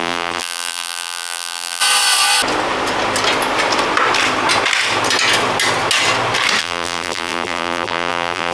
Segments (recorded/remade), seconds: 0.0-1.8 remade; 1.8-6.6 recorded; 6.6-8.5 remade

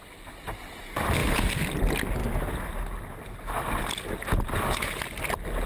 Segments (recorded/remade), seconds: 0.0-0.7 remade; 0.7-5.7 recorded

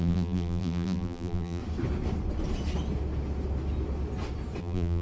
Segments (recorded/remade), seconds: 0.0-1.6 remade; 1.6-4.6 recorded; 4.6-5.0 remade

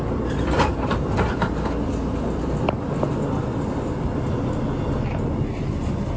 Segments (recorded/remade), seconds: 0.0-0.7 recorded; 0.7-3.7 remade; 3.7-6.2 recorded

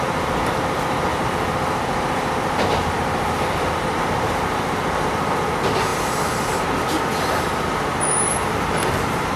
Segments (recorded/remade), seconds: 0.0-1.1 recorded; 1.1-4.1 remade; 4.1-5.9 recorded; 5.9-9.4 remade